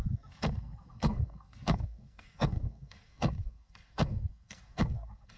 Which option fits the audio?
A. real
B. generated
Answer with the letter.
B